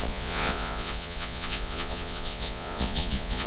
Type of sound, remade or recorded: remade